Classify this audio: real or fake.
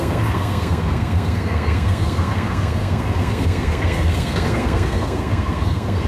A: fake